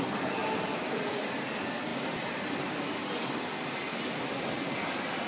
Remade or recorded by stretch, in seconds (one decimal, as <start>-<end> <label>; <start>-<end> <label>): 0.0-5.3 recorded